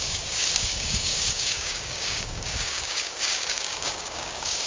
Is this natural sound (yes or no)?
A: no